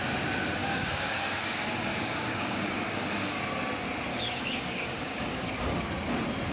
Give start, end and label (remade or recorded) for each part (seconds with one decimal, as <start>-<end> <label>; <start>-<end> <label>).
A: 0.0-0.6 recorded; 0.6-3.4 remade; 3.4-4.1 recorded; 4.1-5.5 remade; 5.5-6.5 recorded